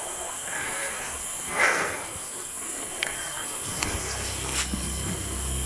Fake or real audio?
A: fake